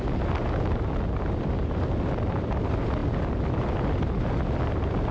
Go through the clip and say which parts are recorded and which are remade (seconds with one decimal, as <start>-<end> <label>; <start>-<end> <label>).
0.0-5.1 recorded